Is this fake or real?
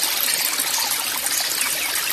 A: real